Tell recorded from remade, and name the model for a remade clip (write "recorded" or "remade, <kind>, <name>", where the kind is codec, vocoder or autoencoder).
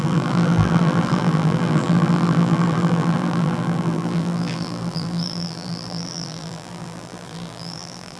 remade, vocoder, BigVGAN v2